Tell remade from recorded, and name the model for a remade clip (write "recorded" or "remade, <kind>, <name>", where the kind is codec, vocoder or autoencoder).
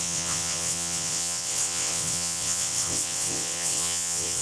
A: remade, vocoder, WaveNeXt